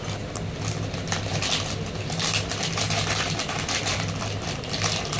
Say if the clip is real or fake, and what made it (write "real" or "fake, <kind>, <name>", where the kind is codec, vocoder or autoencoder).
real